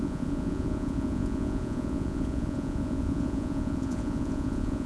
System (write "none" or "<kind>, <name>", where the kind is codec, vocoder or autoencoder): vocoder, Vocos